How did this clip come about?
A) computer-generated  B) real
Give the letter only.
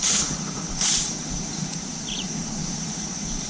A